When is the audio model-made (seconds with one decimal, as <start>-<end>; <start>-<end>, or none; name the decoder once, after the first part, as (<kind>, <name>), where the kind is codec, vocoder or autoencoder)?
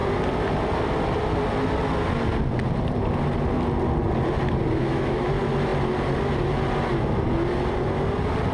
4.8-5.3 (autoencoder, DAC-VAE)